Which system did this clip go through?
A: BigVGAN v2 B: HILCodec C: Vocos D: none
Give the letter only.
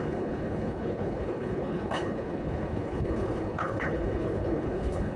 B